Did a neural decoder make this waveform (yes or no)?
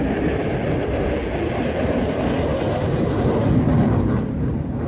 no